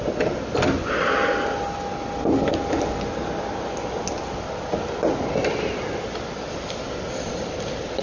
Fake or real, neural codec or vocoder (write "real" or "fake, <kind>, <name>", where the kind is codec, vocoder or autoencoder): real